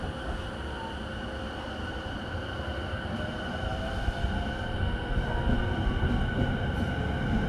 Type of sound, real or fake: real